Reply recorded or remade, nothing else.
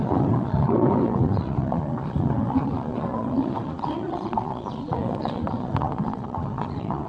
remade